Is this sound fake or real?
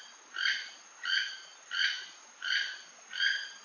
real